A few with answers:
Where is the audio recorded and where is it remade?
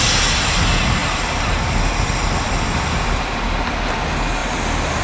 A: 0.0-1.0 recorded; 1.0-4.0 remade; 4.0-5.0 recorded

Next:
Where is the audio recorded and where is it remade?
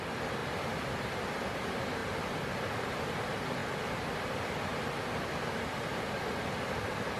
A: 0.0-0.4 recorded; 0.4-1.2 remade; 1.2-2.0 recorded; 2.0-2.8 remade; 2.8-7.2 recorded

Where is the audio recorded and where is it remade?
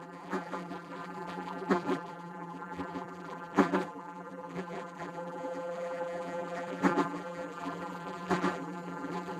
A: 0.0-9.4 remade